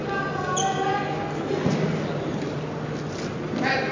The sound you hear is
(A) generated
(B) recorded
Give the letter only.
B